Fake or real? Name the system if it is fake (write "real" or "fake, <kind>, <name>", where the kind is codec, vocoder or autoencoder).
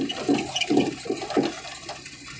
real